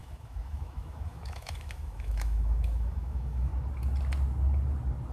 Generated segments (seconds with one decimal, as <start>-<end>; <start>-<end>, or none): 0.0-3.5

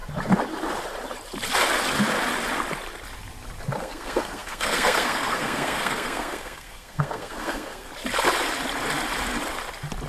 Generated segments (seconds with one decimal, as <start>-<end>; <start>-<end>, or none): 3.8-7.9

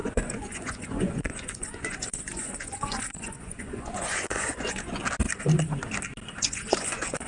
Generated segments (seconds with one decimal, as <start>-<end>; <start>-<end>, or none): 0.0-5.0; 6.4-7.3

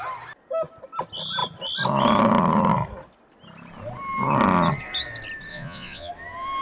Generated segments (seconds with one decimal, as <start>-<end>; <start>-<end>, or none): 5.5-6.1

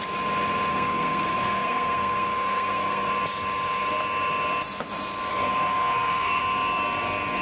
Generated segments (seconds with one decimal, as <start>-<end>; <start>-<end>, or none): 0.7-3.1; 5.3-6.4

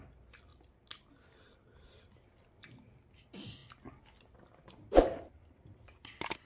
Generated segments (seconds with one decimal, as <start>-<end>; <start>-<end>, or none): none

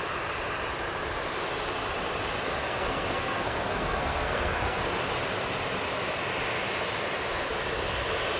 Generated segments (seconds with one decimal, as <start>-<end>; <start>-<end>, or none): 2.6-4.8